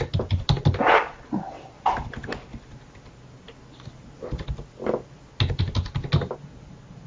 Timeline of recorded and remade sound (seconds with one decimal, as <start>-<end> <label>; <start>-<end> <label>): 0.0-7.1 recorded